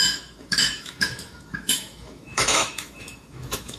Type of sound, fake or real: fake